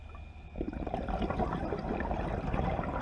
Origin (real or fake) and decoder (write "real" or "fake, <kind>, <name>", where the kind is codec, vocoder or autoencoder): real